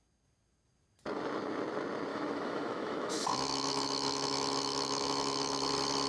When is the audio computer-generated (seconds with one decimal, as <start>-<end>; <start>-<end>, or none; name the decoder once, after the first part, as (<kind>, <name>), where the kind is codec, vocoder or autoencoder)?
2.1-5.6 (autoencoder, DAC-VAE)